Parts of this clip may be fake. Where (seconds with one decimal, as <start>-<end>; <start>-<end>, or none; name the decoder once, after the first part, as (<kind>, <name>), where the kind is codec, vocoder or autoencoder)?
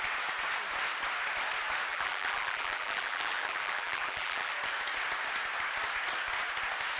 1.9-4.5 (vocoder, BigVGAN v2)